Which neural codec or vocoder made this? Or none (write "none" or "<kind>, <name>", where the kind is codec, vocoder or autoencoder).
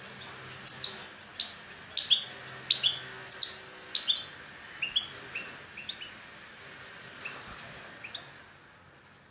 none